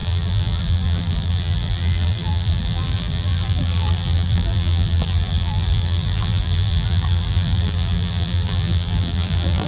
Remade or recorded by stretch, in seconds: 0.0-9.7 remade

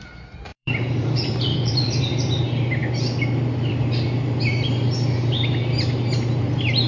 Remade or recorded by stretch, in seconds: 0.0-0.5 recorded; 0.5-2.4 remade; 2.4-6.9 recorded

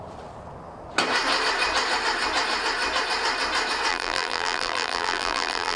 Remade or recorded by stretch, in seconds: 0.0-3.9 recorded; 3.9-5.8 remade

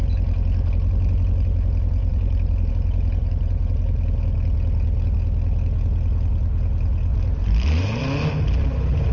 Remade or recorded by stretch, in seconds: 0.0-2.0 recorded; 2.0-2.7 remade; 2.7-7.1 recorded; 7.1-8.0 remade; 8.0-9.1 recorded

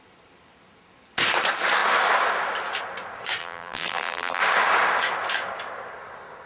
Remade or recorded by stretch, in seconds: 0.0-3.4 recorded; 3.4-4.4 remade; 4.4-6.5 recorded

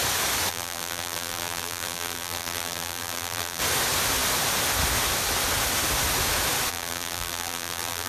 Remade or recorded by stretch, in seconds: 0.0-0.5 recorded; 0.5-3.6 remade; 3.6-6.7 recorded; 6.7-8.1 remade

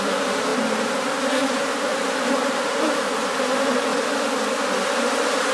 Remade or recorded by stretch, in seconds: 0.0-3.9 remade; 3.9-5.1 recorded; 5.1-5.5 remade

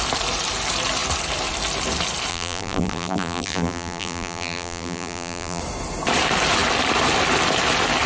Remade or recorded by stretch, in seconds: 0.0-2.3 recorded; 2.3-5.6 remade; 5.6-8.1 recorded